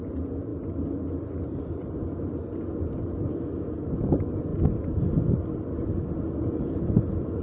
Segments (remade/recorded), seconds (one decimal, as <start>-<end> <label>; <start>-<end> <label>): 0.0-7.4 recorded